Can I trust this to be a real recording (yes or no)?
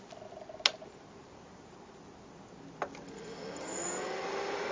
yes